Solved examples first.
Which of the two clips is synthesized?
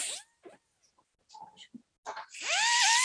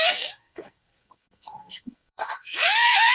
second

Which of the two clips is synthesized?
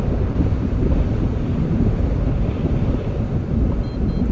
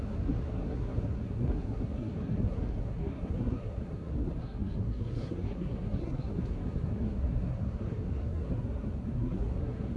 second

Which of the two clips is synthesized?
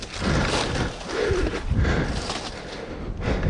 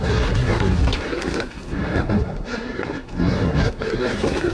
second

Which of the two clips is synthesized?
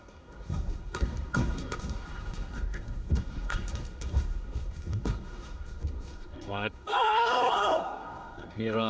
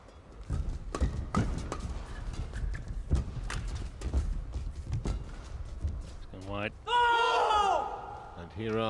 first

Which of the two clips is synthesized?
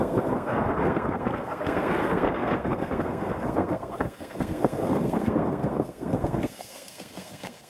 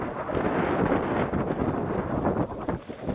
first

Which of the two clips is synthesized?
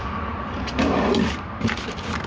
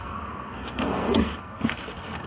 second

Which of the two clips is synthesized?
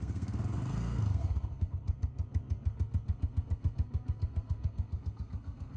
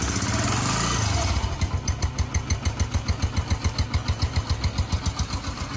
first